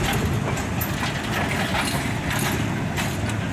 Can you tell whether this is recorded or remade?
recorded